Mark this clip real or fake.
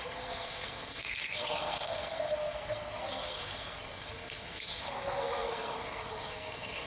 fake